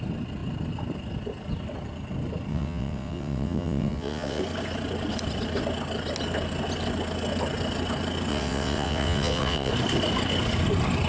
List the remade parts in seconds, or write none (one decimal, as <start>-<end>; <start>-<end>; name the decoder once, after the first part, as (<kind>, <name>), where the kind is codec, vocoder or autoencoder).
2.5-4.4 (vocoder, WaveNeXt); 8.3-9.7

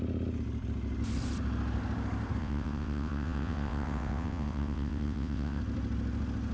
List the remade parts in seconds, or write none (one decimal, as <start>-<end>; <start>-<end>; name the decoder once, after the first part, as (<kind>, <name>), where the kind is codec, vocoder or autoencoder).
2.4-5.6 (vocoder, WaveNeXt)